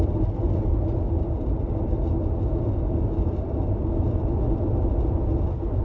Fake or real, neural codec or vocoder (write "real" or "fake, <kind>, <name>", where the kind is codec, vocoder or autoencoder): real